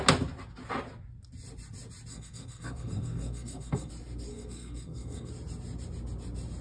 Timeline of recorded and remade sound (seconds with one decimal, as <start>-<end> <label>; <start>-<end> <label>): 0.0-2.1 recorded; 2.1-3.9 remade; 3.9-4.3 recorded; 4.3-5.3 remade; 5.3-6.6 recorded